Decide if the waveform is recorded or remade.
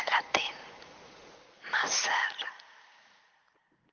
remade